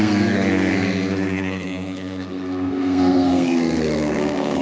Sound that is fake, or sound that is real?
fake